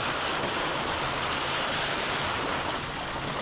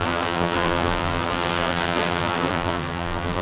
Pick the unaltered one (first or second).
first